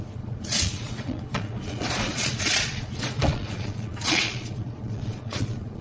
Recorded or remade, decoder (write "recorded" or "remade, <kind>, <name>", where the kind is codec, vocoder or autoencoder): remade, vocoder, Vocos